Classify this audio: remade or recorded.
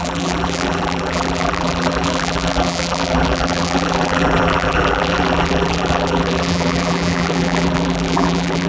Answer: remade